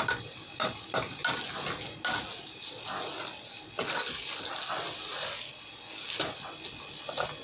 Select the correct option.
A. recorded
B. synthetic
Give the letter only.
A